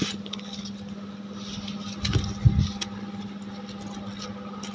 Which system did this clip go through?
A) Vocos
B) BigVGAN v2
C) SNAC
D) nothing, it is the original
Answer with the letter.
D